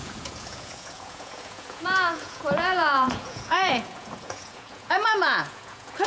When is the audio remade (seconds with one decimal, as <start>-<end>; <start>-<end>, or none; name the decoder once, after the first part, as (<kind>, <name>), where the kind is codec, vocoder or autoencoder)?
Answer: 0.0-6.1 (vocoder, Vocos)